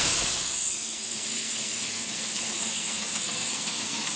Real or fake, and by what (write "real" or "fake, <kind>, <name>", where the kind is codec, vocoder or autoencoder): fake, codec, SNAC